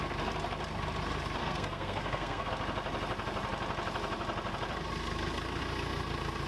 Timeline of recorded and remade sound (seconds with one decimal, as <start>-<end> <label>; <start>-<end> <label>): 0.0-1.4 recorded; 1.4-2.5 remade; 2.5-6.5 recorded